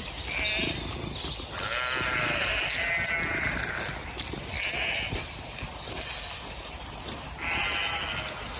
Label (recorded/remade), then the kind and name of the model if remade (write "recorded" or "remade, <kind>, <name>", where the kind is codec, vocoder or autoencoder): recorded